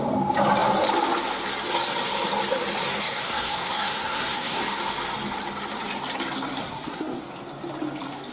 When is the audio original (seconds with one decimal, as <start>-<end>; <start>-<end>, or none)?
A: 0.0-2.9; 4.6-6.6; 7.2-8.3